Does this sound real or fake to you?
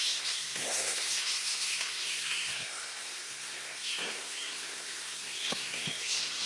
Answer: fake